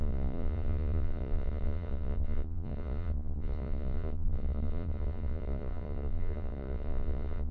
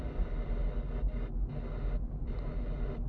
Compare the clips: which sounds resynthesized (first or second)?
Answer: first